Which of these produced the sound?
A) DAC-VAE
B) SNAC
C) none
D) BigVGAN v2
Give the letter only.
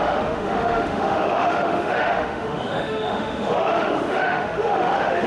A